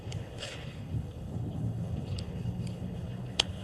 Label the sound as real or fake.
fake